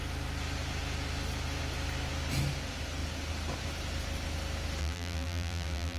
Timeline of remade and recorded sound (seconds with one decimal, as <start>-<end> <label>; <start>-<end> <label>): 0.0-4.8 recorded; 4.8-6.0 remade